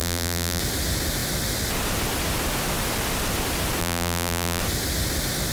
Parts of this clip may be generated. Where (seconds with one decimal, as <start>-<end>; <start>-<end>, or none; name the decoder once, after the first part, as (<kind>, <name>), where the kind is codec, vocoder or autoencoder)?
0.0-0.6 (vocoder, BigVGAN v2); 3.8-4.6